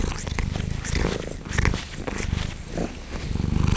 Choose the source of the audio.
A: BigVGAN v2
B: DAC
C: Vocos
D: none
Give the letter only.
D